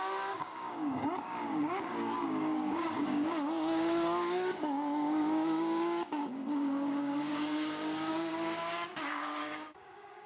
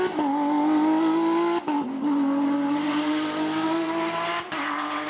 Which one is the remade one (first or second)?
first